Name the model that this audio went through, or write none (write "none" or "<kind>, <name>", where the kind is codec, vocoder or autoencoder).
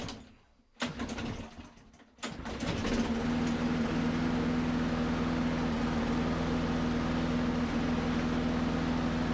none